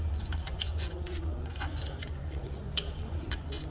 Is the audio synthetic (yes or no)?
yes